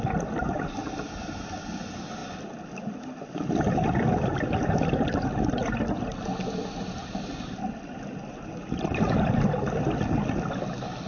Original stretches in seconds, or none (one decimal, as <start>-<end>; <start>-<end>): 0.0-0.8; 1.4-7.0; 7.9-11.1